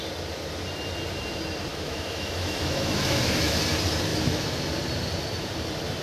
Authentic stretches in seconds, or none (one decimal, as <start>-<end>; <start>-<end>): 0.0-1.7; 3.6-4.1; 4.7-6.0